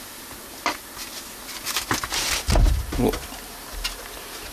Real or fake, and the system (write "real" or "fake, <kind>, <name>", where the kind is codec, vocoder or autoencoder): real